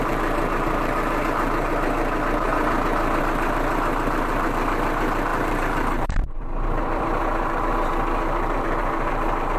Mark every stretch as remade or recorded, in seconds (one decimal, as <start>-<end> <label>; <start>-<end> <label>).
0.0-2.5 remade; 2.5-3.2 recorded; 3.2-9.6 remade